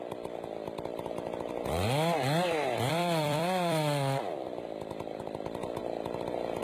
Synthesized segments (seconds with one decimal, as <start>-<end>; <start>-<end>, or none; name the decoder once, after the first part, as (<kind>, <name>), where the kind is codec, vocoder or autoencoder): 0.9-1.5 (vocoder, BigVGAN v2); 2.9-5.2